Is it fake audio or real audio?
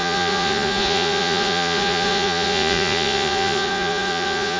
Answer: fake